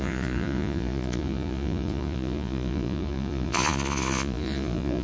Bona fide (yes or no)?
no